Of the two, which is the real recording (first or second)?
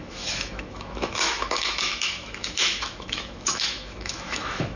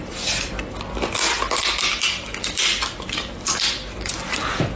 second